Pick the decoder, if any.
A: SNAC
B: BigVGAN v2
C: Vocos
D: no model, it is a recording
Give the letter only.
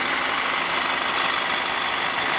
D